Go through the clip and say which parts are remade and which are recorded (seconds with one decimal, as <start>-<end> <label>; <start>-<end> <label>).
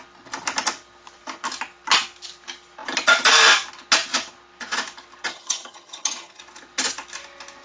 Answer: 0.0-5.3 recorded; 5.3-6.4 remade; 6.4-7.6 recorded